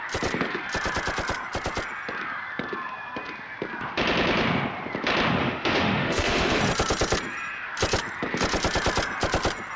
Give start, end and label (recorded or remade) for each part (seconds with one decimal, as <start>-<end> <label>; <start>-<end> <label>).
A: 0.0-5.4 recorded; 5.4-6.6 remade; 6.6-9.8 recorded